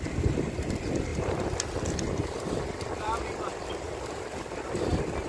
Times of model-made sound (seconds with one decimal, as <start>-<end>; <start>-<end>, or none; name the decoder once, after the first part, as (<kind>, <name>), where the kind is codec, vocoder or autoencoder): 0.0-1.1 (vocoder, BigVGAN v2); 2.1-5.3